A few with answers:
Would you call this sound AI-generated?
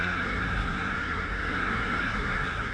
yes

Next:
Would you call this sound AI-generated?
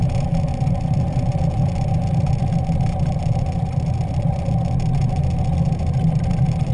no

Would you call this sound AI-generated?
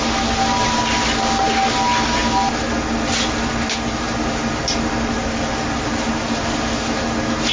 no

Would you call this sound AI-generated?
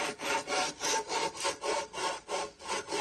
no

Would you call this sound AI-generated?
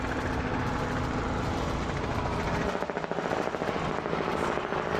no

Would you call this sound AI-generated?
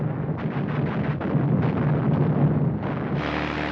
no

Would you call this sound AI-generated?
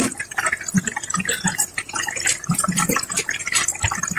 yes